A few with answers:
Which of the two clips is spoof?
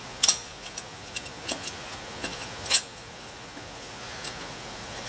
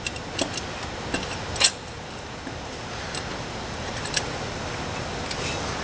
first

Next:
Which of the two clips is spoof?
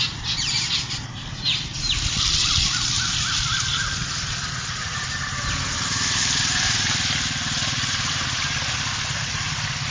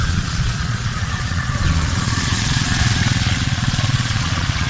second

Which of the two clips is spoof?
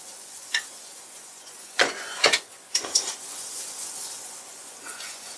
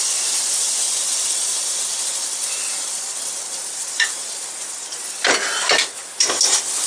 first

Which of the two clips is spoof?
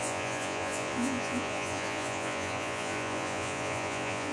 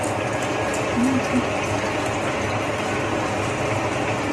first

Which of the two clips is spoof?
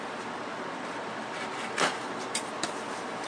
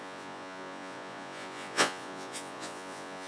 second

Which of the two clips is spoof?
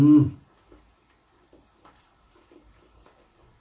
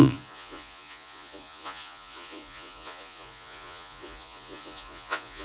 second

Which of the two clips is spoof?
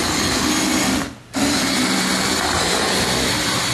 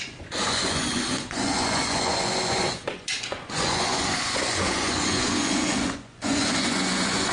second